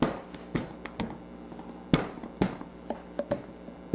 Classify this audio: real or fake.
real